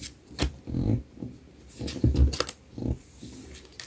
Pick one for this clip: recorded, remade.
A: recorded